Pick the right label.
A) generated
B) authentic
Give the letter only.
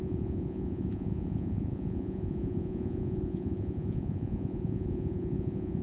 A